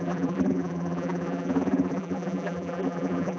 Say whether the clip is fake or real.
fake